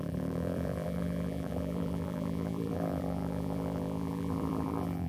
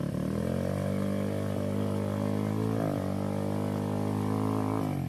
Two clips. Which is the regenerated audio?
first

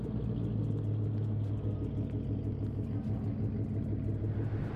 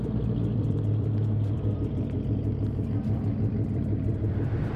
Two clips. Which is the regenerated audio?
second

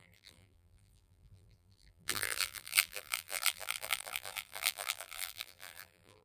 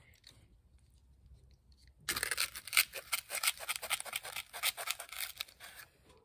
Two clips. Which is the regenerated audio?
first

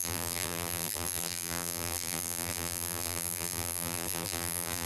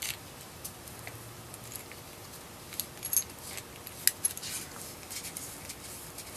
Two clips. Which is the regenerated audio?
first